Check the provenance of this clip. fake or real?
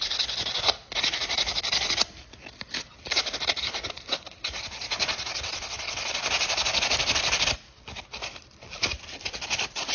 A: real